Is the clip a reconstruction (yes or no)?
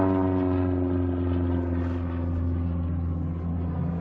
no